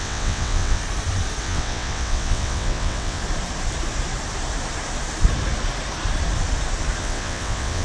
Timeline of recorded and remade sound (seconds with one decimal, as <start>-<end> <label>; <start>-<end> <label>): 0.0-0.8 remade; 0.8-1.4 recorded; 1.4-3.2 remade; 3.2-7.0 recorded; 7.0-7.8 remade

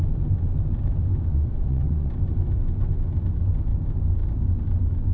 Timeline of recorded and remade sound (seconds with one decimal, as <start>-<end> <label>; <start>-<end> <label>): 0.0-1.3 recorded; 1.3-2.1 remade; 2.1-5.1 recorded

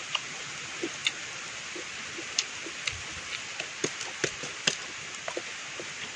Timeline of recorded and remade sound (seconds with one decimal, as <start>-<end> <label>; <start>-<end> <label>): 0.0-6.2 recorded

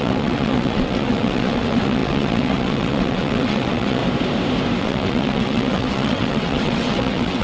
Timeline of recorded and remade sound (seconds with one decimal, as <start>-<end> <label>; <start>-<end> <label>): 0.0-4.0 remade; 4.0-4.8 recorded; 4.8-7.4 remade

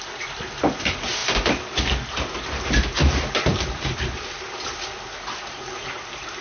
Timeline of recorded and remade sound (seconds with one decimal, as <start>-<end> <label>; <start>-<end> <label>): 0.0-6.4 recorded

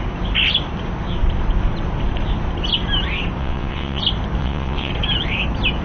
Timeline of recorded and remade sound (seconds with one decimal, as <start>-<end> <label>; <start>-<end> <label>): 0.0-3.4 recorded; 3.4-4.0 remade; 4.0-4.4 recorded; 4.4-4.9 remade; 4.9-5.8 recorded

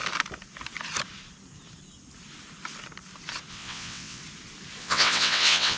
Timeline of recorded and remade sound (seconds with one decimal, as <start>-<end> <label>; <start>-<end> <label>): 0.0-3.5 recorded; 3.5-4.2 remade; 4.2-4.8 recorded; 4.8-5.8 remade